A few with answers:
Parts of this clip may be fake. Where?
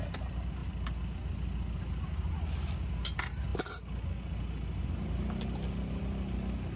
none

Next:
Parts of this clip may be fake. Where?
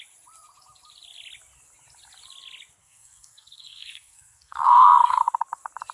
2.8-5.2 (codec, SNAC)